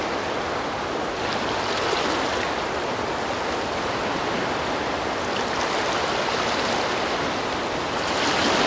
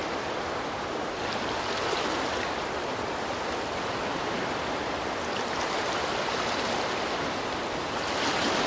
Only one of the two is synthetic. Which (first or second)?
second